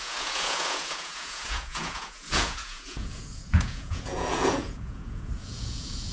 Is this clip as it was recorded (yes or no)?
no